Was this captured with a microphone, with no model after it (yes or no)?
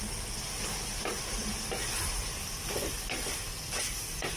yes